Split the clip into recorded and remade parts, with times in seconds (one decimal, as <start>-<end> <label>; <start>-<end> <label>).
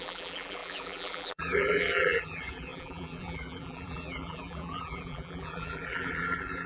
0.0-6.7 remade